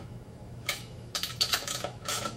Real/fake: fake